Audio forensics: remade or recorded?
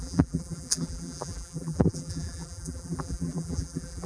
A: remade